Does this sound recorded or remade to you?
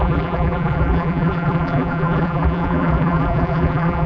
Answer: remade